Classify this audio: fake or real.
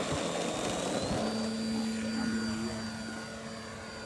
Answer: real